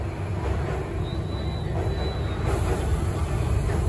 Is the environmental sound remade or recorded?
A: recorded